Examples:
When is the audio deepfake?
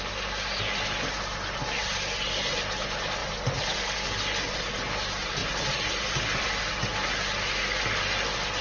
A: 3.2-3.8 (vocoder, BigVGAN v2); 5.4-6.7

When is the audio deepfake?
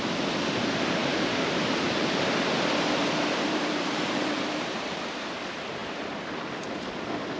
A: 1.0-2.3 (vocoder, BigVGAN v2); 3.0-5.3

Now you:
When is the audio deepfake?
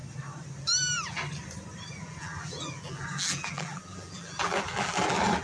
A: 0.6-1.2 (vocoder, BigVGAN v2); 1.9-5.4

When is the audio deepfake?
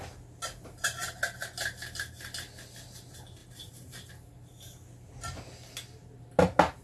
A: 3.4-4.1 (vocoder, BigVGAN v2)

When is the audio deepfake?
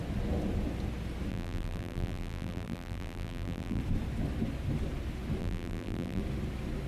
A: 1.3-3.8 (vocoder, BigVGAN v2); 5.4-6.2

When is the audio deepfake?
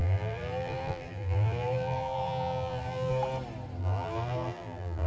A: 0.0-3.1 (vocoder, BigVGAN v2); 3.8-5.1